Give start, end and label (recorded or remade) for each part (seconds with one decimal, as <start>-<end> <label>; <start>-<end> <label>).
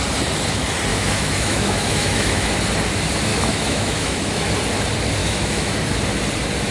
0.0-0.9 recorded; 0.9-2.5 remade; 2.5-3.3 recorded; 3.3-4.5 remade; 4.5-5.2 recorded; 5.2-5.8 remade; 5.8-6.7 recorded